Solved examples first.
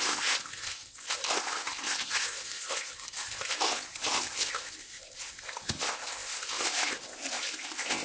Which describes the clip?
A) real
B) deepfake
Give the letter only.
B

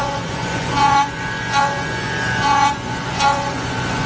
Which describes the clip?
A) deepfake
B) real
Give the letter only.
A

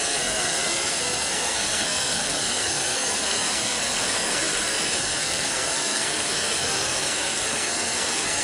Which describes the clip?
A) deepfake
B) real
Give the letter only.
A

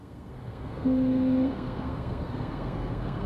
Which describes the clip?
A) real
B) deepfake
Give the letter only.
B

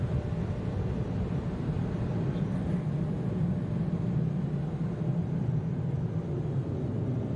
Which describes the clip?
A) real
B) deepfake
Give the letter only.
A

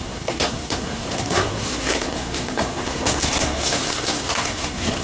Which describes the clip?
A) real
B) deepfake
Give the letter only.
B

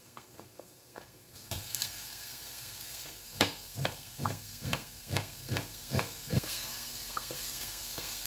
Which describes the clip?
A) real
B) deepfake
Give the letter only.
B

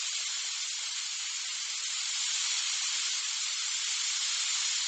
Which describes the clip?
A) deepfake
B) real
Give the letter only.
A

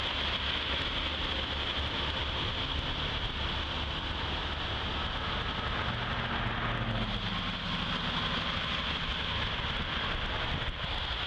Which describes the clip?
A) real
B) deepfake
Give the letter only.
A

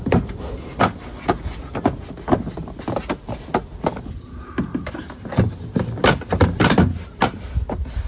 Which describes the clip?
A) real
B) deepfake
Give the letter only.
A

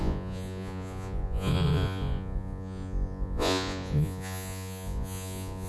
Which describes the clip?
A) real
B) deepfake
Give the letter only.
B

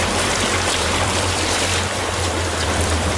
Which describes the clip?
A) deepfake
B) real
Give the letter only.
A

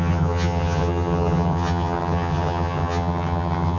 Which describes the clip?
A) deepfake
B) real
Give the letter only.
A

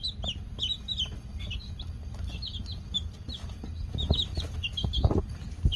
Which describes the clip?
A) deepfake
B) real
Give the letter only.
B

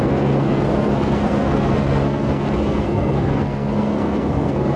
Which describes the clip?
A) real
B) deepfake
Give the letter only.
B